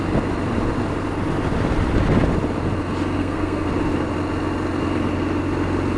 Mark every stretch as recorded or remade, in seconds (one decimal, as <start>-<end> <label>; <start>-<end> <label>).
0.0-3.2 recorded; 3.2-3.7 remade; 3.7-6.0 recorded